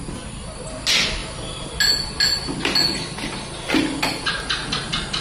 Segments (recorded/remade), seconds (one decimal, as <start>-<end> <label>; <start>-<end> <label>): 0.0-5.2 recorded